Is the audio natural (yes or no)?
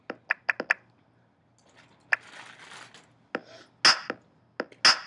yes